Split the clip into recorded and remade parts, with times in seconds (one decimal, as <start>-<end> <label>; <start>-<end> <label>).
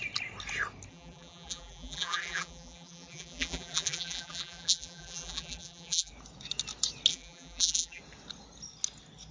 0.0-0.9 recorded; 0.9-6.1 remade; 6.1-7.1 recorded; 7.1-8.0 remade; 8.0-9.3 recorded